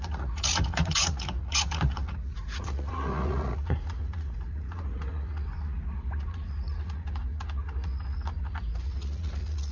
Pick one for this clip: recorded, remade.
remade